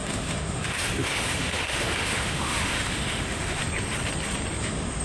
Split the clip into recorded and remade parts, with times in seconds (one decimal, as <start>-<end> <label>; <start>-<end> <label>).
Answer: 0.0-3.6 remade; 3.6-4.6 recorded; 4.6-5.0 remade